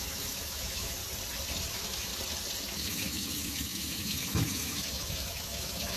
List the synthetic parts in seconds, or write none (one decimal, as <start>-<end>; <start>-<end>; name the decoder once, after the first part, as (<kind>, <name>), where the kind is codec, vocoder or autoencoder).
0.0-1.0 (autoencoder, DAC-VAE); 1.7-2.1; 2.7-6.0